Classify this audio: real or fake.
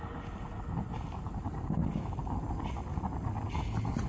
real